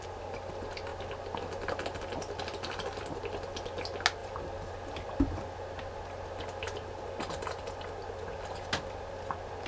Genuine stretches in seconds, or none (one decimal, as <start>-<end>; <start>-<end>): 0.0-9.7